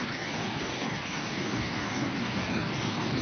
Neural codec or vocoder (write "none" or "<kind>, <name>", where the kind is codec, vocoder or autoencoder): codec, DAC